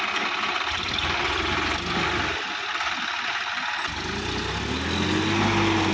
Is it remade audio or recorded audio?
recorded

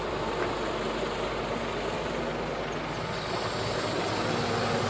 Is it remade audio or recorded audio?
recorded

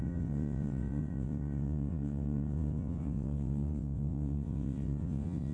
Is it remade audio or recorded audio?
remade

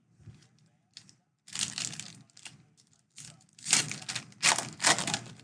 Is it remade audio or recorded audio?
recorded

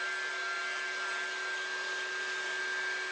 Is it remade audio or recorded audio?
recorded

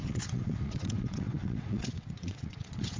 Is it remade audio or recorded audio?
remade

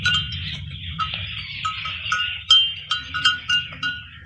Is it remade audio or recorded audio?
recorded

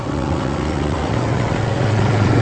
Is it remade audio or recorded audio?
remade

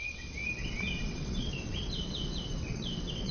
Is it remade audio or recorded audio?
remade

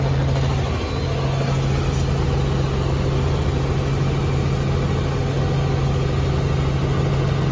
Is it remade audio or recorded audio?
recorded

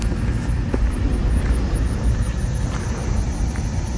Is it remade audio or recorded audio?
recorded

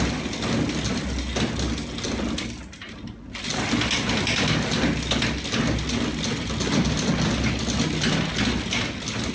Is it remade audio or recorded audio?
recorded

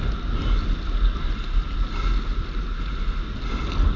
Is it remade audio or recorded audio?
recorded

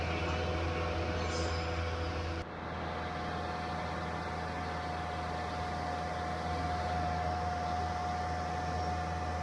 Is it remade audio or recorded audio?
recorded